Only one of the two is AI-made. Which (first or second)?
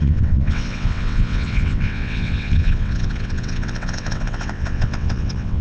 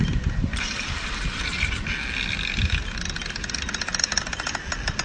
first